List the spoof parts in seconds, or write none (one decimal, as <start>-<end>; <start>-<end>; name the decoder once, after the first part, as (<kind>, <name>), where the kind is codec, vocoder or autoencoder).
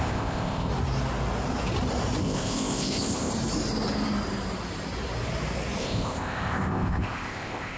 0.0-0.7 (codec, ZipCodec); 2.2-3.3; 5.8-7.8